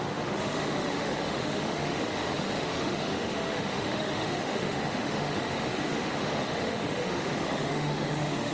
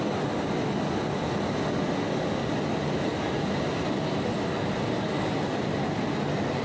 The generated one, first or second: first